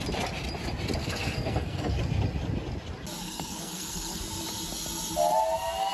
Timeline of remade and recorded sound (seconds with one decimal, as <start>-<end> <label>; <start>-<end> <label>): 0.0-1.0 recorded; 1.0-2.0 remade; 2.0-3.2 recorded; 3.2-4.2 remade; 4.2-5.9 recorded